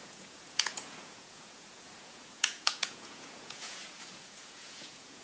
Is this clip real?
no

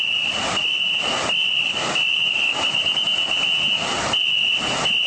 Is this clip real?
yes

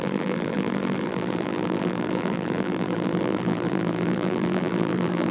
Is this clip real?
no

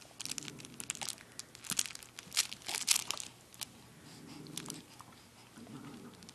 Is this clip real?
yes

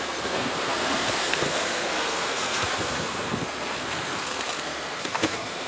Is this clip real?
no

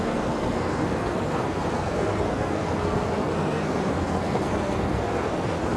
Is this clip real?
no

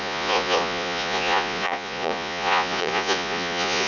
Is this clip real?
no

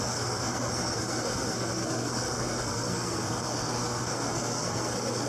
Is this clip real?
no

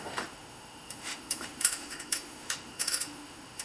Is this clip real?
no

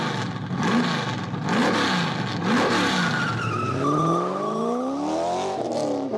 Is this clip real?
yes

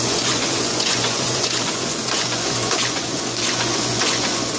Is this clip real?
no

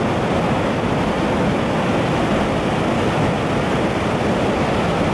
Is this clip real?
yes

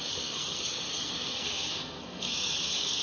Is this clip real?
no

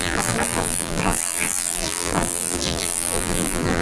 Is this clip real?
no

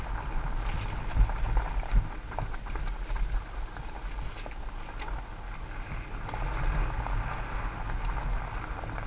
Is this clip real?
yes